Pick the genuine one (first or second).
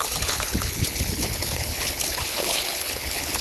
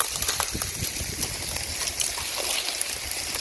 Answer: second